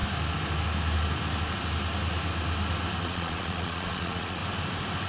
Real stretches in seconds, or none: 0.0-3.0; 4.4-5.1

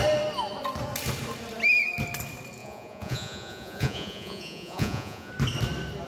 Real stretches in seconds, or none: 0.0-2.6; 5.3-6.1